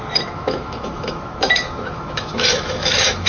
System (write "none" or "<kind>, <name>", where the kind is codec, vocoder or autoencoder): autoencoder, DAC-VAE